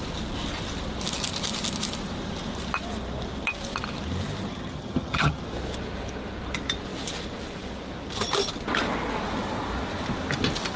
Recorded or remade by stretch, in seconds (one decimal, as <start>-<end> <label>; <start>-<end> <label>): 0.0-4.5 recorded; 4.5-5.4 remade; 5.4-10.8 recorded